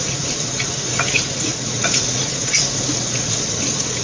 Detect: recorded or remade remade